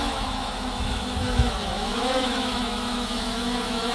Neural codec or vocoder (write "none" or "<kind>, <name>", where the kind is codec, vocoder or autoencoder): autoencoder, DAC-VAE